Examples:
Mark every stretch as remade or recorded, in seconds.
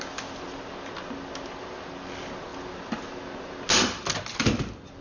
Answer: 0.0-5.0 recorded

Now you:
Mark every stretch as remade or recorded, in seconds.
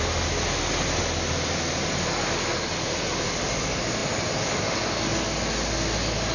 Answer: 0.0-6.3 recorded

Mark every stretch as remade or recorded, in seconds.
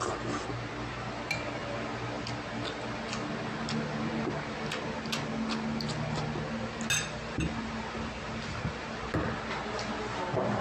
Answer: 0.0-10.6 recorded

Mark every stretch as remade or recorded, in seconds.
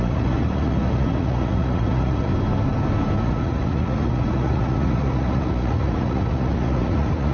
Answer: 0.0-2.3 remade; 2.3-3.2 recorded; 3.2-7.3 remade